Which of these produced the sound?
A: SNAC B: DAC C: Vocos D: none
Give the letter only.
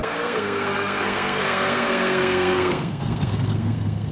A